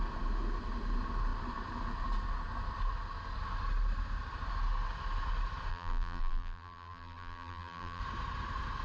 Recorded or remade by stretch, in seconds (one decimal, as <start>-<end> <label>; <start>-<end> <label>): 0.0-5.7 recorded; 5.7-8.0 remade; 8.0-8.8 recorded